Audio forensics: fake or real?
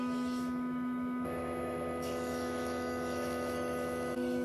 fake